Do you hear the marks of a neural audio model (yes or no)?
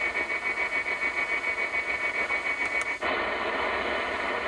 no